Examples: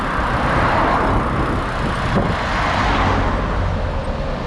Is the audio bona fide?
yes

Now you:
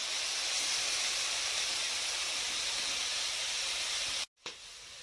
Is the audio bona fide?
yes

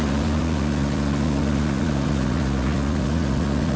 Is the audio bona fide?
no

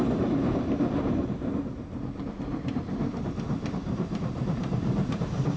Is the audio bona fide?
no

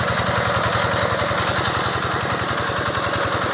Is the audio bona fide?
yes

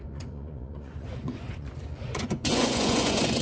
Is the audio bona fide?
no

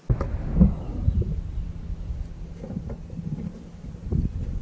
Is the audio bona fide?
yes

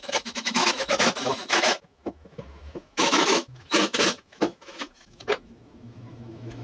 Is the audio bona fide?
no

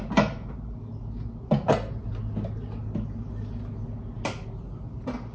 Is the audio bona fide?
yes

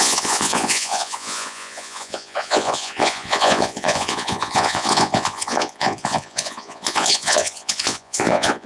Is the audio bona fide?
no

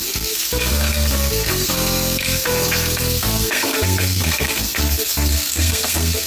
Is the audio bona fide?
no